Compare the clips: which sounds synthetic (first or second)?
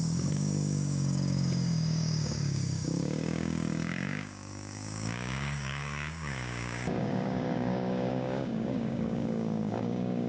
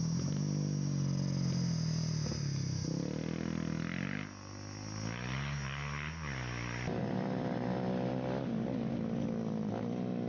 first